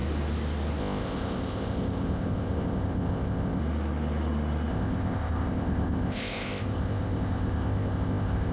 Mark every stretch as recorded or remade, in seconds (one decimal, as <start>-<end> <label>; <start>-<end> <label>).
0.0-0.8 recorded; 0.8-3.6 remade; 3.6-4.7 recorded; 4.7-8.5 remade